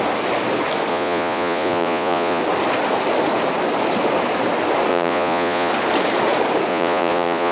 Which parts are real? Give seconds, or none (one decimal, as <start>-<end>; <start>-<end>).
0.0-0.9; 2.4-4.9; 5.7-6.7